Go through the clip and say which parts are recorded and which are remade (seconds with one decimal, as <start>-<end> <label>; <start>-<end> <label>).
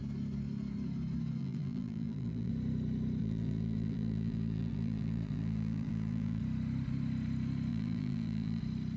0.0-1.4 recorded; 1.4-2.5 remade; 2.5-3.2 recorded; 3.2-6.4 remade; 6.4-7.7 recorded; 7.7-8.6 remade; 8.6-9.0 recorded